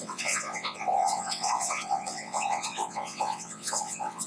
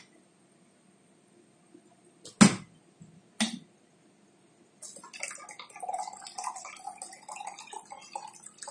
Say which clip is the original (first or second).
second